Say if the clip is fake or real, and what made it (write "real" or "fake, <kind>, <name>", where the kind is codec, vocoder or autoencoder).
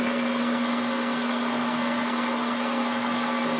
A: fake, codec, SNAC